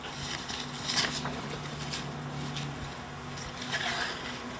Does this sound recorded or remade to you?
recorded